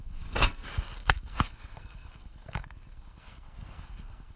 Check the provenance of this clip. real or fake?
fake